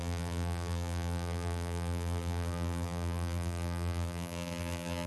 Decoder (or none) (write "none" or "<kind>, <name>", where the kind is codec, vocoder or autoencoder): vocoder, BigVGAN v2